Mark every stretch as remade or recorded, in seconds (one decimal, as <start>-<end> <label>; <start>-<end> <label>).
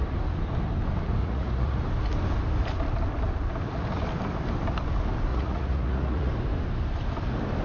0.0-1.2 recorded; 1.2-1.8 remade; 1.8-5.3 recorded; 5.3-6.3 remade; 6.3-7.6 recorded